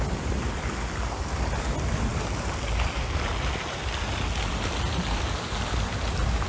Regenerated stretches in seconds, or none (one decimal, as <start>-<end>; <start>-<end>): none